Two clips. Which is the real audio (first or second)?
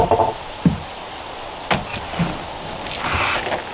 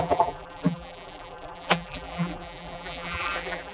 first